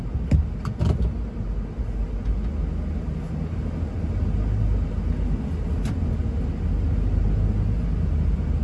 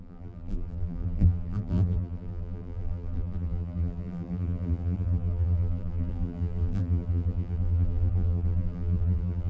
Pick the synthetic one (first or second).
second